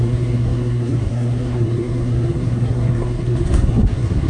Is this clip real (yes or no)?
no